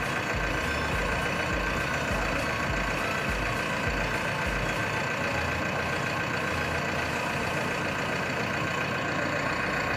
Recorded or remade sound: recorded